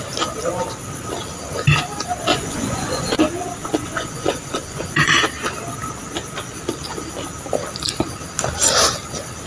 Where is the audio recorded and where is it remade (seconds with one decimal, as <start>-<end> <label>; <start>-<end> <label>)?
0.0-2.3 recorded; 2.3-3.2 remade; 3.2-3.6 recorded; 3.6-5.1 remade; 5.1-9.5 recorded